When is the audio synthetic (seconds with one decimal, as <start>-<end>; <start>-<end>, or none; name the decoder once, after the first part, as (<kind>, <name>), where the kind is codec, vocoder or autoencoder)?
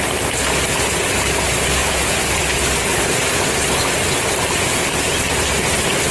1.8-2.4 (vocoder, Vocos)